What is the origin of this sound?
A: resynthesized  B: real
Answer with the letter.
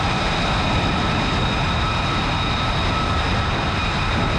B